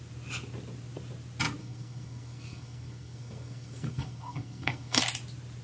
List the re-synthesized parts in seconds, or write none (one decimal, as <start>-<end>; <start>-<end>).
1.6-5.0